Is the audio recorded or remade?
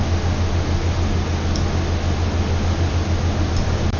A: recorded